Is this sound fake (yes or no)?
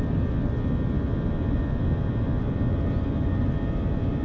no